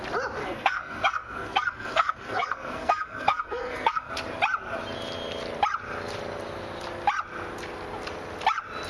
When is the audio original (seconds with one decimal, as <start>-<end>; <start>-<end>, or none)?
0.0-0.4; 4.1-8.9